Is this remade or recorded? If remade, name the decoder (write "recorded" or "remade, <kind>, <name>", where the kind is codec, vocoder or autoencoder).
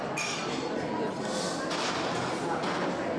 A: recorded